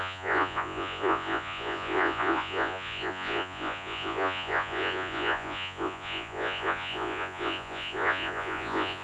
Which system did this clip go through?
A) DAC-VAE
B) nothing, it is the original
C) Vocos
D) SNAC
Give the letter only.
C